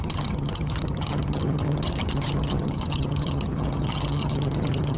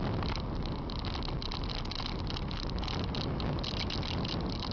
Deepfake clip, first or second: first